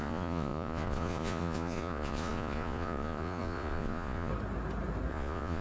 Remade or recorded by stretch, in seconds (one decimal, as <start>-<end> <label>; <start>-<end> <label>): 0.0-4.3 remade; 4.3-5.1 recorded; 5.1-5.6 remade